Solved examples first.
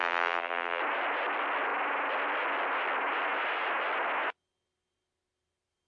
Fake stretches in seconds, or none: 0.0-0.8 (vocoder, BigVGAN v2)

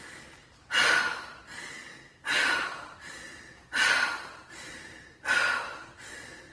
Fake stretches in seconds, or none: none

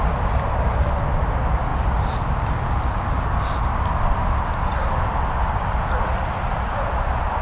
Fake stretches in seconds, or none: none